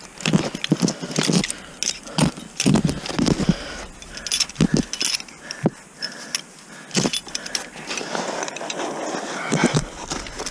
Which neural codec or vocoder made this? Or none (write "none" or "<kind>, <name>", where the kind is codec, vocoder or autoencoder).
none